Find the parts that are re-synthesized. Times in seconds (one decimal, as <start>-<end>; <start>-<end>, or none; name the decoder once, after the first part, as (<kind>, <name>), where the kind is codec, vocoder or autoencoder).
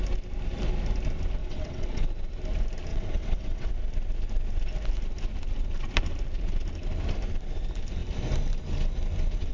1.4-2.1 (vocoder, WaveNeXt); 2.9-3.7